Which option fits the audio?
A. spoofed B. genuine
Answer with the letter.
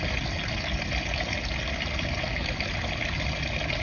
B